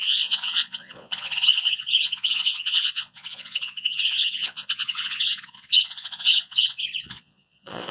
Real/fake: fake